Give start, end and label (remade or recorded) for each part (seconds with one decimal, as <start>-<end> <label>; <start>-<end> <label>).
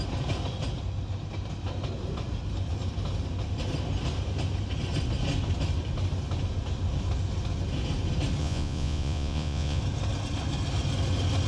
0.0-8.4 recorded; 8.4-9.8 remade; 9.8-11.5 recorded